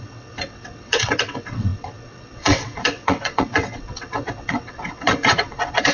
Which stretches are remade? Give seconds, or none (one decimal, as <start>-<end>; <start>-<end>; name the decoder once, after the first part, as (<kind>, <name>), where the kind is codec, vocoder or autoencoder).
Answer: 0.0-5.9 (vocoder, WaveNeXt)